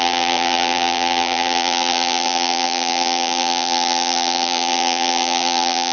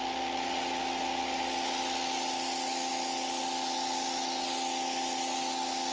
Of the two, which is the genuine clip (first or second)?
second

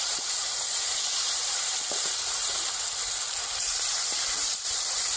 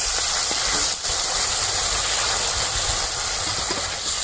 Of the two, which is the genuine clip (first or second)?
second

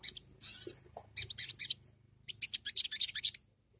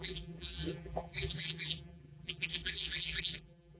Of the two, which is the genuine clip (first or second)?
first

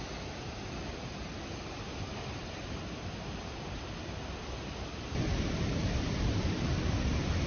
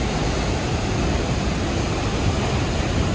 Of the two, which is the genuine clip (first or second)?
second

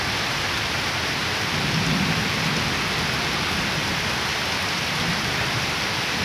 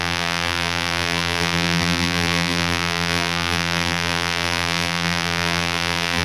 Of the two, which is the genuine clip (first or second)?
first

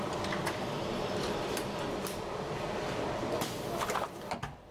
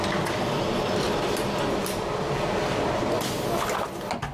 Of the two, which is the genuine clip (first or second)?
second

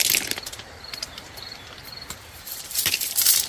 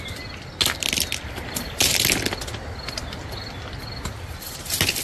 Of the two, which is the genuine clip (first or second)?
second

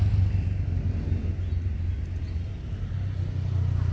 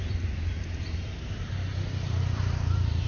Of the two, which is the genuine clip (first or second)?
first